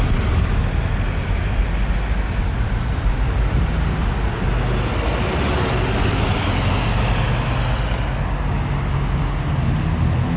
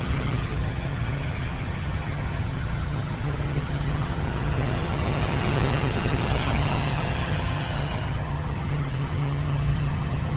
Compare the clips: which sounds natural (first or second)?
first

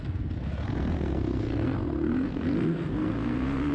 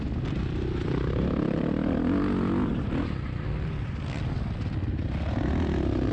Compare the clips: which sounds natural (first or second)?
second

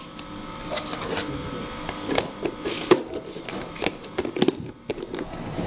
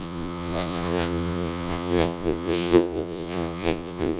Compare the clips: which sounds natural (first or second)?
first